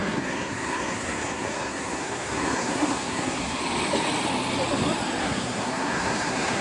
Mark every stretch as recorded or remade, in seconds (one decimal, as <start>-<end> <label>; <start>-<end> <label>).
0.0-3.6 remade; 3.6-5.2 recorded; 5.2-6.6 remade